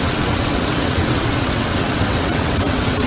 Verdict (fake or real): fake